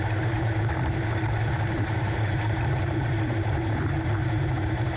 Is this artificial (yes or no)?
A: yes